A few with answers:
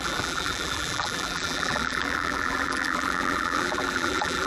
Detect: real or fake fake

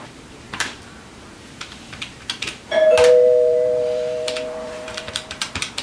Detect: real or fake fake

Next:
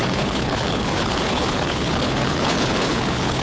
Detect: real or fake fake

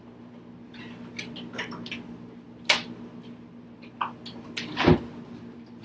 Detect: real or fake real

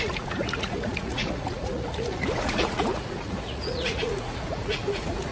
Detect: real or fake fake